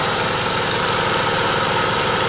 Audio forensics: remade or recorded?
recorded